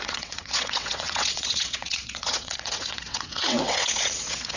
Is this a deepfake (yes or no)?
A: yes